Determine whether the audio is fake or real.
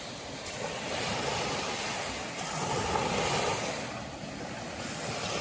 real